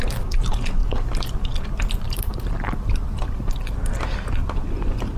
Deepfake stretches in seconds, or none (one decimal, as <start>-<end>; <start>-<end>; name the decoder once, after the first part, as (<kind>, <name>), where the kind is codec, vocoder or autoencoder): 0.8-3.6 (vocoder, BigVGAN v2)